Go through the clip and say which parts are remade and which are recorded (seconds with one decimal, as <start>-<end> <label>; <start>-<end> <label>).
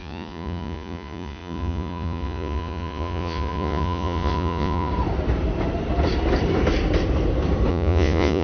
0.0-4.9 remade; 4.9-7.7 recorded; 7.7-8.4 remade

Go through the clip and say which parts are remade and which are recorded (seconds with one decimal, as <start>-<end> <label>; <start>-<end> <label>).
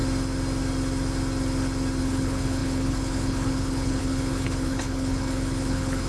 0.0-2.0 recorded; 2.0-6.1 remade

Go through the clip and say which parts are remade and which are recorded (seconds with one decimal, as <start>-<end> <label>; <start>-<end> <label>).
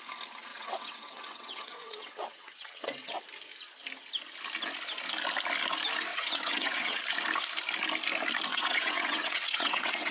0.0-0.5 recorded; 0.5-3.2 remade; 3.2-6.1 recorded; 6.1-7.0 remade; 7.0-8.5 recorded; 8.5-10.1 remade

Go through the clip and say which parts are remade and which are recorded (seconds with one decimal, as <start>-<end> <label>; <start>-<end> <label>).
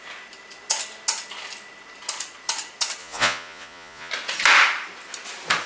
0.0-3.0 recorded; 3.0-4.1 remade; 4.1-5.7 recorded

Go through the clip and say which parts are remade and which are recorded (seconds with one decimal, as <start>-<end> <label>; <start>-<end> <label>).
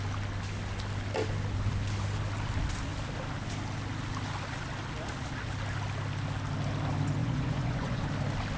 0.0-7.2 recorded; 7.2-8.0 remade; 8.0-8.6 recorded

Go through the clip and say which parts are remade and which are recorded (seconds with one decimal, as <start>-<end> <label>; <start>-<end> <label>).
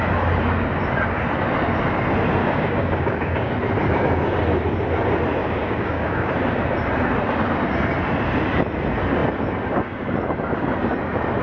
0.0-2.4 recorded; 2.4-3.5 remade; 3.5-5.4 recorded; 5.4-6.3 remade; 6.3-11.4 recorded